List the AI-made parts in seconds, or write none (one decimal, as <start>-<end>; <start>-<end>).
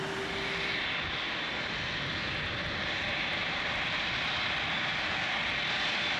3.4-4.9